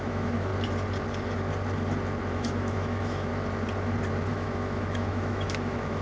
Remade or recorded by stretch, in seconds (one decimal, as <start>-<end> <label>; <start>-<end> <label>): 0.0-0.5 remade; 0.5-2.3 recorded; 2.3-3.3 remade; 3.3-4.3 recorded; 4.3-6.0 remade